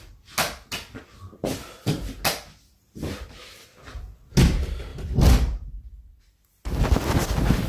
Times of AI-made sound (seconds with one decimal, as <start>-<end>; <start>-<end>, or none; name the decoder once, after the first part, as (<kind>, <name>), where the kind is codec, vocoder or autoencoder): 1.4-2.0 (vocoder, BigVGAN v2); 4.9-6.2